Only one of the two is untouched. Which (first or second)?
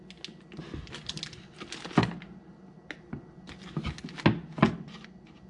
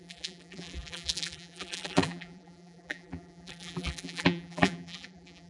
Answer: first